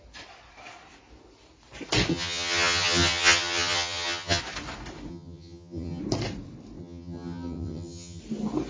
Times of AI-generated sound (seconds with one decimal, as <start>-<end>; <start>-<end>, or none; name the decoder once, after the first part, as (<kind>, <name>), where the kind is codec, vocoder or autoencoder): 2.1-4.4 (vocoder, HiFi-GAN); 5.1-6.0; 6.8-8.2